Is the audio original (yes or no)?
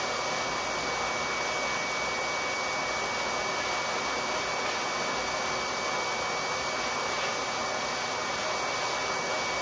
yes